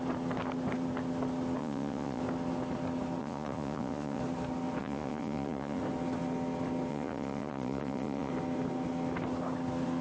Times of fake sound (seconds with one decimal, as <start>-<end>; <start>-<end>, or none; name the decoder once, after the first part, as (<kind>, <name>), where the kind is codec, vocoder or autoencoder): 1.6-2.2 (vocoder, Vocos); 3.2-4.2; 4.8-5.8; 6.9-8.3